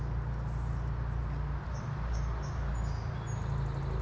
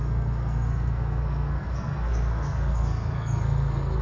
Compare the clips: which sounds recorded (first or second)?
first